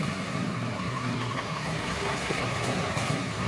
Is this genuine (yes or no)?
no